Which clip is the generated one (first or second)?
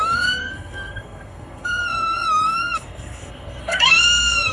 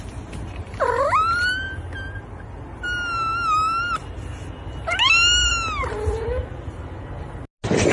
first